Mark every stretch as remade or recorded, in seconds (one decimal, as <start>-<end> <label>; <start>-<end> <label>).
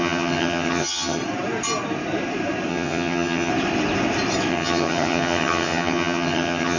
0.0-1.2 remade; 1.2-2.7 recorded; 2.7-3.5 remade; 3.5-4.5 recorded; 4.5-6.8 remade